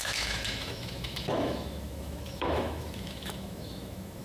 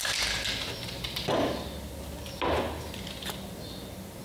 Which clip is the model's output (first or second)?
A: first